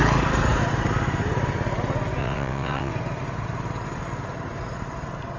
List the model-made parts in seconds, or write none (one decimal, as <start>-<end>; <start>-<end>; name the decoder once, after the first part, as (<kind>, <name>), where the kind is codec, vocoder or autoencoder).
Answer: 2.2-2.9 (vocoder, WaveNeXt)